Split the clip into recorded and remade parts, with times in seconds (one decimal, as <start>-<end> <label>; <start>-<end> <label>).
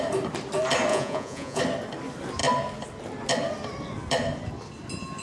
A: 0.0-0.9 recorded; 0.9-1.6 remade; 1.6-5.2 recorded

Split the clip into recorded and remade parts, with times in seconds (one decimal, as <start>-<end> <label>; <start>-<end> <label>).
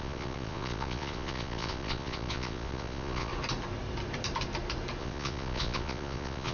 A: 0.0-3.3 remade; 3.3-5.0 recorded; 5.0-6.5 remade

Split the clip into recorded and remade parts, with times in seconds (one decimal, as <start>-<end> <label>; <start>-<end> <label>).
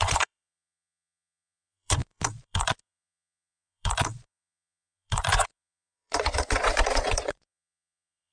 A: 0.0-8.3 remade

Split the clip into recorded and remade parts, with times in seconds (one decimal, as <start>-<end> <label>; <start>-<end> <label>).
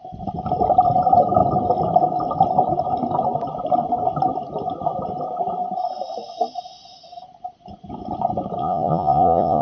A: 0.0-8.6 recorded; 8.6-9.6 remade